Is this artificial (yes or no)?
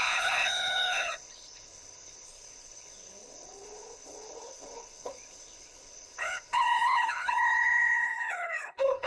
yes